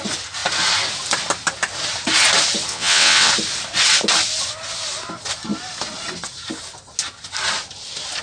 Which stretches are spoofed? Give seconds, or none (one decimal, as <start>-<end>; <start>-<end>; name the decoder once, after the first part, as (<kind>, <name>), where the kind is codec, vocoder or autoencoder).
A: 2.7-3.3 (vocoder, WaveNeXt)

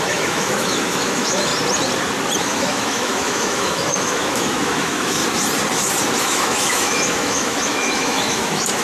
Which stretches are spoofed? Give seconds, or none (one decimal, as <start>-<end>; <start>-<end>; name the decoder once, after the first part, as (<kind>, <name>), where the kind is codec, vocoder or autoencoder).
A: 0.0-1.5 (autoencoder, DAC-VAE); 2.4-5.2; 6.2-8.8

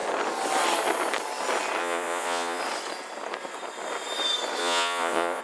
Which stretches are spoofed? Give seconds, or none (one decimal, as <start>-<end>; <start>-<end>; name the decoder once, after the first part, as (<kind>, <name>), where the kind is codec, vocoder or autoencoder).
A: 1.8-2.6 (vocoder, Vocos); 4.6-5.4

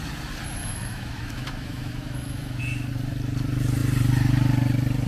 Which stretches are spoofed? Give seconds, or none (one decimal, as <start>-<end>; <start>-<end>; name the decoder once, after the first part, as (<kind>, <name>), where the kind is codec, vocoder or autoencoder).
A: 0.6-2.6 (autoencoder, DAC-VAE)

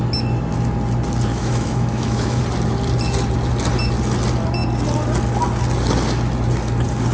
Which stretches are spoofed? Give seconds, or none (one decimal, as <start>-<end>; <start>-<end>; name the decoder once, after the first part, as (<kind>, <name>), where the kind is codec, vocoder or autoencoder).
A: 1.3-2.4 (autoencoder, DAC-VAE)

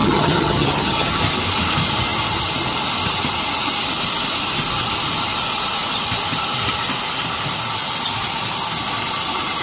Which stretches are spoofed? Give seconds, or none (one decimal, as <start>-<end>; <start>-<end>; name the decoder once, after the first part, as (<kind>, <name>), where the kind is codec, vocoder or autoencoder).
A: 0.0-1.2 (vocoder, HiFi-GAN)